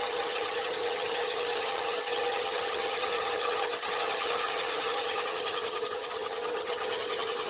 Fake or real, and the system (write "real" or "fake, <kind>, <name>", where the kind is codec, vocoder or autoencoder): fake, vocoder, HiFi-GAN